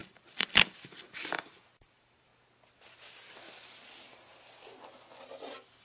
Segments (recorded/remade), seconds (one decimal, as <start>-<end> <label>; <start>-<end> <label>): 0.0-2.3 remade; 2.3-5.8 recorded